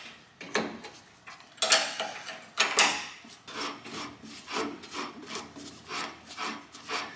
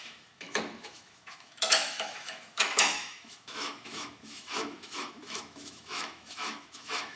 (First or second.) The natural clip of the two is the first